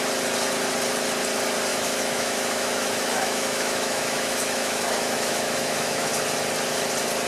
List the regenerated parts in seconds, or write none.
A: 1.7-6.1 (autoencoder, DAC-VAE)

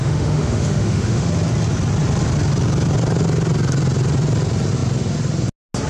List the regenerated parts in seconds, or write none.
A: 0.0-1.3 (autoencoder, DAC-VAE)

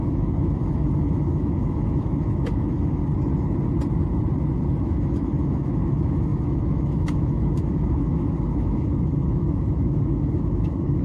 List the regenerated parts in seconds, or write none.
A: 0.0-3.0 (autoencoder, DAC-VAE); 4.8-11.0

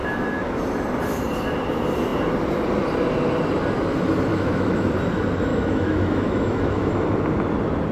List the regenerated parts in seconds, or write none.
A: 0.0-0.6 (autoencoder, DAC-VAE); 4.3-4.9; 5.5-6.9

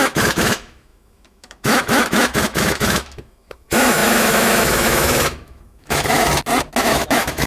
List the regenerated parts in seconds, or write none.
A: 0.0-6.3 (autoencoder, DAC-VAE); 6.8-7.5

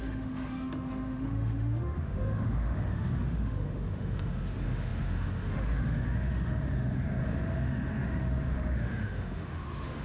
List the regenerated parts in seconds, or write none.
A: 0.0-10.0 (autoencoder, DAC-VAE)

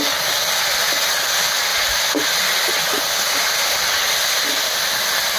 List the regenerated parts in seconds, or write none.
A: none